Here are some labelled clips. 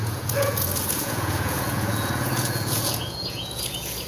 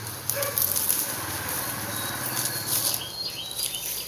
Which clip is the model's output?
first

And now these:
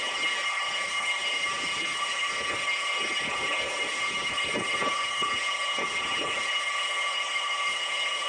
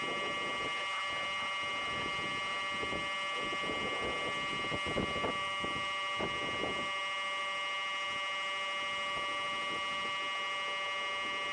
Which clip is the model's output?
first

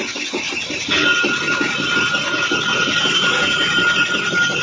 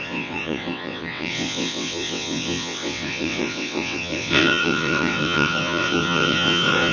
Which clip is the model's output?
second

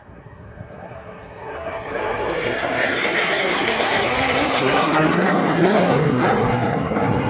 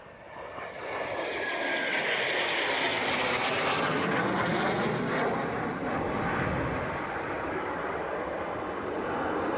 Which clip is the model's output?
first